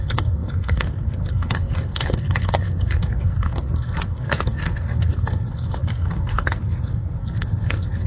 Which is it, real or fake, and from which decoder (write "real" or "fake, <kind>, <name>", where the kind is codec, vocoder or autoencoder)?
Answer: fake, codec, SNAC